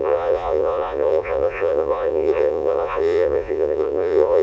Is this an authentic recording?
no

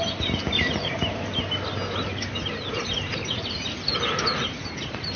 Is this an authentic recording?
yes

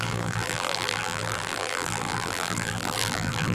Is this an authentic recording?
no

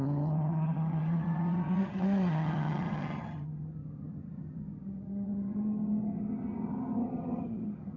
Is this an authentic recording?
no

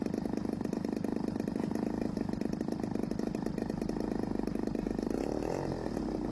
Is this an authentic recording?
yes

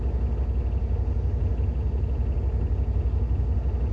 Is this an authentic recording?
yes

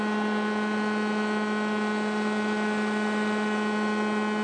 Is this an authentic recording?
yes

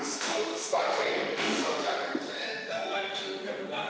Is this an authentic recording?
no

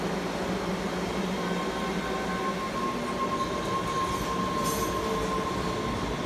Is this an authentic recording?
yes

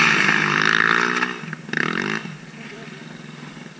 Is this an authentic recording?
yes